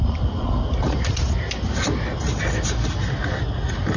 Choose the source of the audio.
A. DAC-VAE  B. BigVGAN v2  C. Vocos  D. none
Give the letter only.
D